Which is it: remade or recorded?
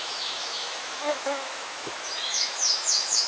remade